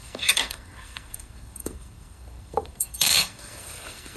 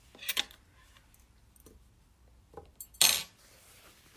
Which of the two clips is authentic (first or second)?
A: second